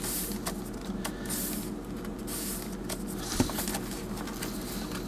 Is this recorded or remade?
recorded